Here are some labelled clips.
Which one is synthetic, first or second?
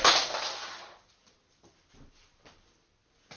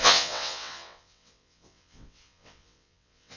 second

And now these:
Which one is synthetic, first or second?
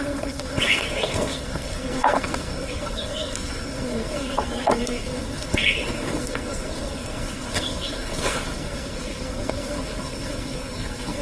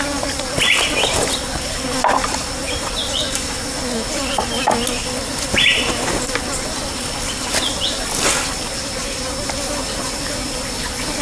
first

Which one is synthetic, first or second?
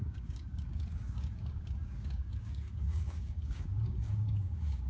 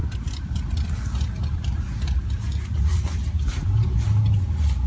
first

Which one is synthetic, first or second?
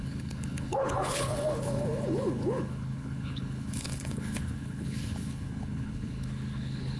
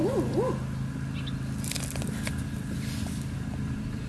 first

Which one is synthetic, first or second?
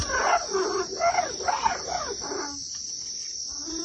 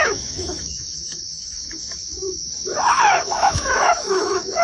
second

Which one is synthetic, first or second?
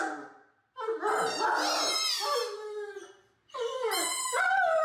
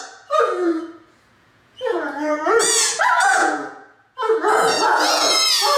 second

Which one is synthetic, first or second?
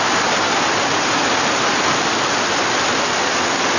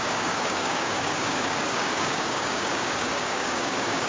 second